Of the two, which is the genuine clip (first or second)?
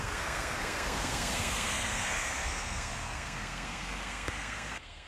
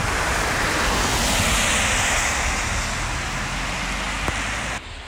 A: second